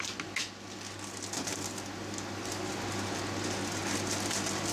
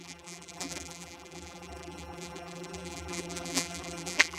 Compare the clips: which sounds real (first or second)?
first